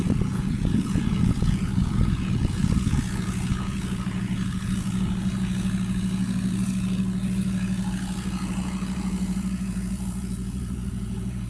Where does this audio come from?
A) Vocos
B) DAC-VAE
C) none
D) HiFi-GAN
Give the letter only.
A